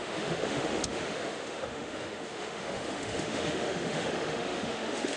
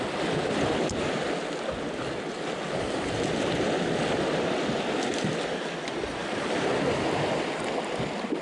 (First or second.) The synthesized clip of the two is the first